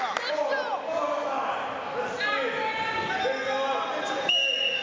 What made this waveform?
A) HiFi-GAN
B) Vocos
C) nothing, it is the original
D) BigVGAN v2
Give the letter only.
C